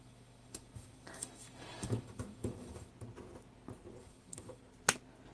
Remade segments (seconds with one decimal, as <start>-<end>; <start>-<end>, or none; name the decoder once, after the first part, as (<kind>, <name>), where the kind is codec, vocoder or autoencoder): 0.0-2.9 (autoencoder, DAC-VAE); 4.0-4.6